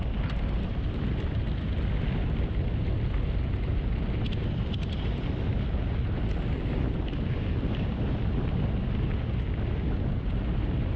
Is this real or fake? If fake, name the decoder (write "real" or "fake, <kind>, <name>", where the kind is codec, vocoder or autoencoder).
real